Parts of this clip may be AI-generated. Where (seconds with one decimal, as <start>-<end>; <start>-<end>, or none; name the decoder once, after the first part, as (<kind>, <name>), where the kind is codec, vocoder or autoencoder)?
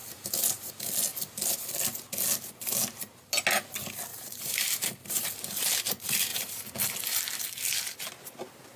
0.0-0.7 (vocoder, BigVGAN v2); 4.1-5.3; 6.3-7.2